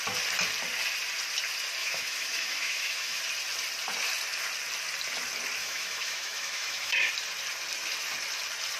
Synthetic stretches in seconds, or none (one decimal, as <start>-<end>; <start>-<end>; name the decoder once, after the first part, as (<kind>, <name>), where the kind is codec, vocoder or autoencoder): 1.8-3.2 (autoencoder, DAC-VAE); 5.6-7.1